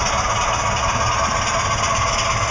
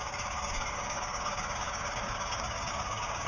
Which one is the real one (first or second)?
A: first